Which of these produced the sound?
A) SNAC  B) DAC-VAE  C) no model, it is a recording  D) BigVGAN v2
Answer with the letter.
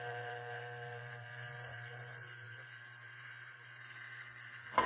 D